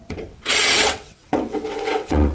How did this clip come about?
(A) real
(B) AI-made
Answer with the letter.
B